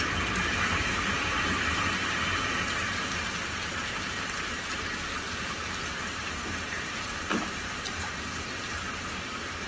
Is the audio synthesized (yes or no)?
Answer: yes